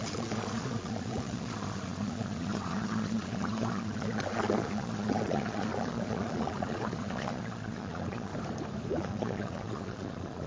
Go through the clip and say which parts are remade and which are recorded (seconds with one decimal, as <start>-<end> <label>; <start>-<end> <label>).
0.0-8.3 remade; 8.3-8.9 recorded; 8.9-10.5 remade